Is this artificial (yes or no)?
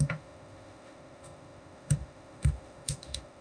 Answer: yes